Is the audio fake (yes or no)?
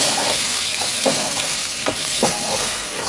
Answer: yes